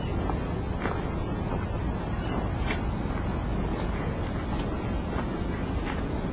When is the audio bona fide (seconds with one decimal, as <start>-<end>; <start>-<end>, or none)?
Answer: 0.0-6.3